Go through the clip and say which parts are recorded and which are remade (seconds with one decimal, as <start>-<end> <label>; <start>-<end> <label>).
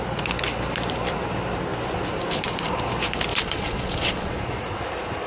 0.0-3.3 recorded; 3.3-4.8 remade; 4.8-5.3 recorded